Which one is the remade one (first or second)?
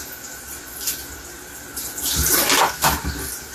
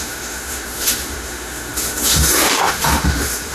second